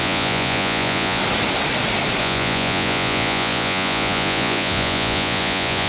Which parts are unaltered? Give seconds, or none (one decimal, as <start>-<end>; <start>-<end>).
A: 1.2-2.2